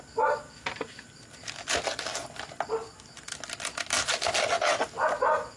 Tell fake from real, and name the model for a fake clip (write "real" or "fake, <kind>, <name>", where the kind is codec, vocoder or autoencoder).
real